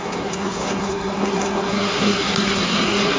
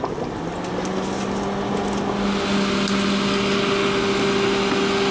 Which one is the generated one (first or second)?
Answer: first